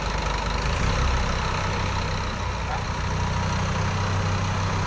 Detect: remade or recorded recorded